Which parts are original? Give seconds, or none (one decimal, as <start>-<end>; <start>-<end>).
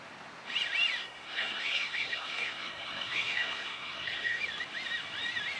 0.0-1.0; 4.4-5.6